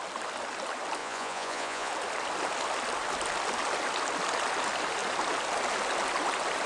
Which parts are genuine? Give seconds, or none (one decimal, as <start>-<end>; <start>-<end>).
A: 0.0-1.0; 1.9-6.7